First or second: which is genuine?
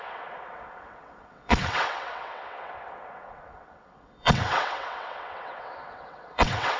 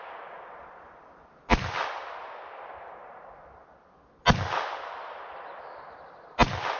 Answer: second